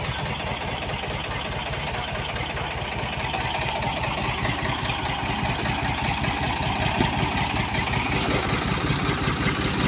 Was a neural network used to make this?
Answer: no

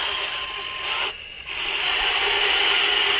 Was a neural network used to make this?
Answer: no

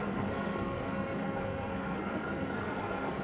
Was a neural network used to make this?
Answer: yes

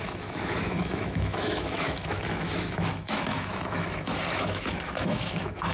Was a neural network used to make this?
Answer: yes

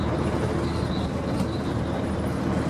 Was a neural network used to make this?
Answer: no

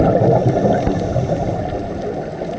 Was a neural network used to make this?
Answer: no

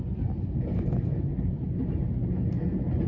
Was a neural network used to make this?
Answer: no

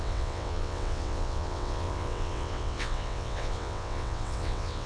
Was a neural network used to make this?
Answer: yes